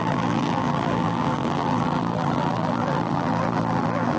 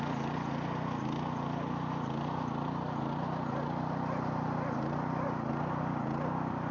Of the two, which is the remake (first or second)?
first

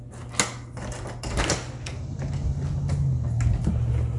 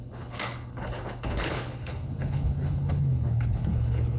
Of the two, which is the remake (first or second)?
second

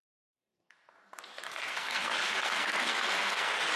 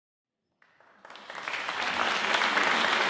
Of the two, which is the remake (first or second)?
first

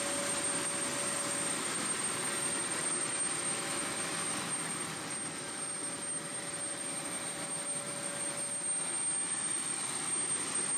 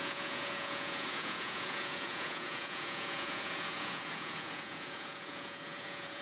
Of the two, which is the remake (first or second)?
second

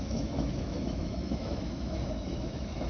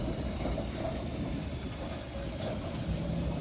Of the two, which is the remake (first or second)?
first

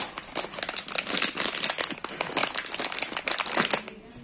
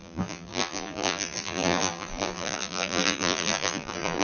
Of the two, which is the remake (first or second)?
second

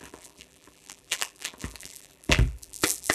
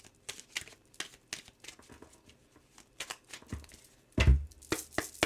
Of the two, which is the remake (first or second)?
first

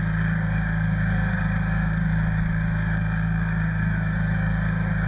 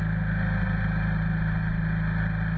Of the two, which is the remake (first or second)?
first